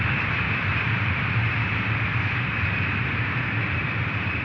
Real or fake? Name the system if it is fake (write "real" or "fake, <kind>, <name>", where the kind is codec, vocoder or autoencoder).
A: fake, vocoder, BigVGAN v2